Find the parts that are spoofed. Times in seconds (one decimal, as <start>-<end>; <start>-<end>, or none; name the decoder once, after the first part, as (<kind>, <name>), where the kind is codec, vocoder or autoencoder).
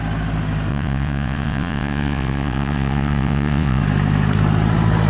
0.7-3.8 (vocoder, WaveNeXt)